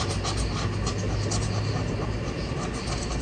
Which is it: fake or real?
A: real